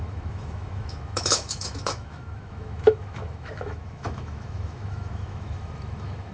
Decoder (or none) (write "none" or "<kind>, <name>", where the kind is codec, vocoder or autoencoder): autoencoder, DAC-VAE